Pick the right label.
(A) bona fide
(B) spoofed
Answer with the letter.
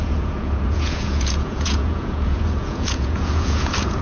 B